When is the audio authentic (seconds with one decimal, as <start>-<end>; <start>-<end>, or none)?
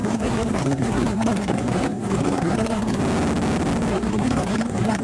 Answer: 3.0-3.9